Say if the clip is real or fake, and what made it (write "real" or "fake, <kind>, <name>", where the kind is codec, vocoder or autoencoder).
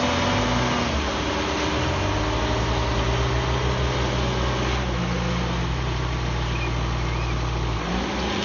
real